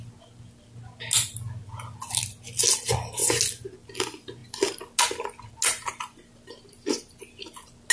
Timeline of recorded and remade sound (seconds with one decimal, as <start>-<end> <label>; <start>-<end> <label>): 0.0-7.9 recorded